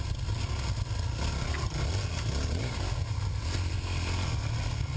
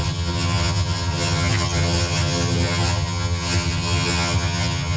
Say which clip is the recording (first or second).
first